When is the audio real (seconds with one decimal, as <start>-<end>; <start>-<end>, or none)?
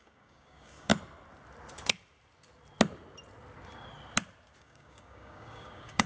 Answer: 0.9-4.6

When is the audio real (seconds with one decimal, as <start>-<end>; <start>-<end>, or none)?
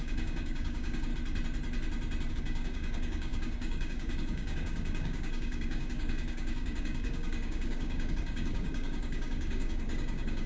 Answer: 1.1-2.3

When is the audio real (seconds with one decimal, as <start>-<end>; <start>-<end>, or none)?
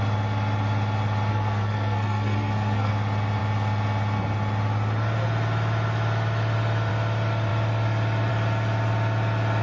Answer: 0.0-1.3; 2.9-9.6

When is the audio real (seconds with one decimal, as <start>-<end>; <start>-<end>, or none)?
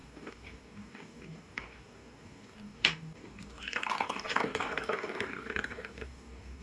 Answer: none